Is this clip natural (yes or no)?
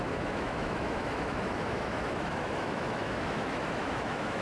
no